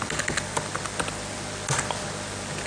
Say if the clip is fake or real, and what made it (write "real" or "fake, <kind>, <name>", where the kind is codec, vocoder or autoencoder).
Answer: real